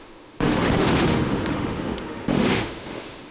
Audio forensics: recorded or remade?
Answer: remade